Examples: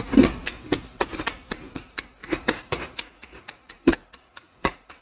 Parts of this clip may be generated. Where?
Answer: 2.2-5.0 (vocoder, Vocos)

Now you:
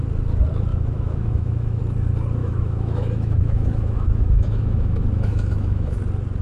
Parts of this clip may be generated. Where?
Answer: 0.7-1.8 (autoencoder, DAC-VAE); 2.4-6.0

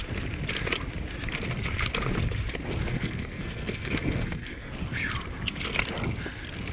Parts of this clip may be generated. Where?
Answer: 2.9-4.7 (codec, SNAC)

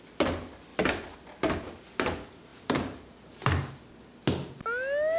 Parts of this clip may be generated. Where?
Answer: none

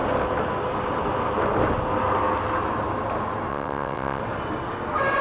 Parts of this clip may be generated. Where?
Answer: 3.5-4.2 (vocoder, WaveNeXt)

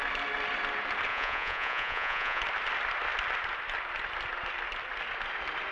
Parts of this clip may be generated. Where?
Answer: 1.1-2.4 (vocoder, Vocos)

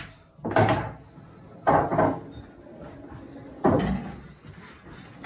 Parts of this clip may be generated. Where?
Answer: none

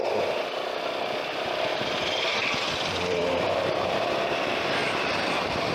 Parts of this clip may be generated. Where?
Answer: 0.0-1.7 (vocoder, BigVGAN v2); 2.7-4.8